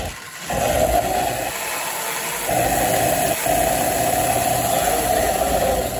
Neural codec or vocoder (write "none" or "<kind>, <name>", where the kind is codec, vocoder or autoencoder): none